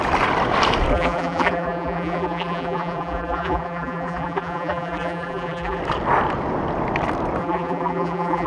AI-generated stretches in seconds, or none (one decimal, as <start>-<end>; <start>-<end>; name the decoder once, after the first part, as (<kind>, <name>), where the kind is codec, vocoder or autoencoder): 0.9-5.8 (vocoder, BigVGAN v2); 7.4-8.5